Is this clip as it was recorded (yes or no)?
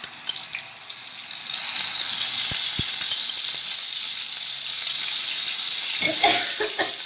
yes